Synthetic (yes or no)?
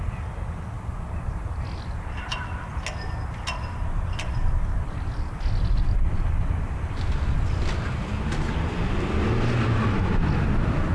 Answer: no